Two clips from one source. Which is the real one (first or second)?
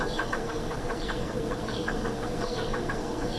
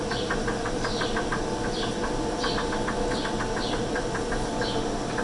second